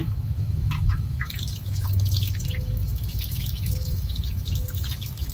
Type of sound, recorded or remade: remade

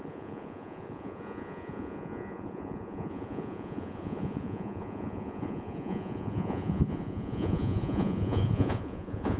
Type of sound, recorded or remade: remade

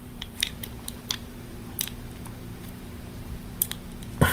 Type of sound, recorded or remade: remade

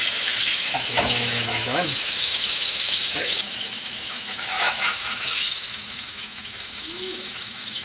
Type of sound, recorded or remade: remade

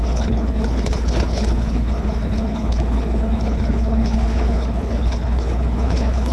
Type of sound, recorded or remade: remade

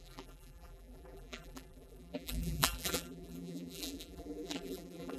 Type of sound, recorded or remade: remade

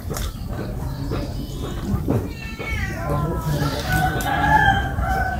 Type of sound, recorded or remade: remade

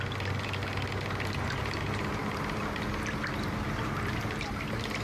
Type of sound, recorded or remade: recorded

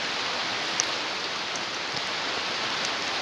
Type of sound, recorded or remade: recorded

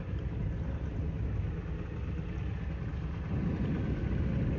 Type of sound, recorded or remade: recorded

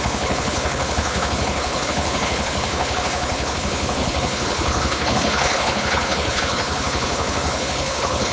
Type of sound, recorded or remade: remade